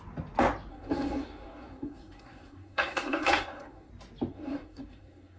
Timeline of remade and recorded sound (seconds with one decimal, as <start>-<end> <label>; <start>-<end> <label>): 0.0-0.7 recorded; 0.7-3.9 remade; 3.9-4.3 recorded; 4.3-5.4 remade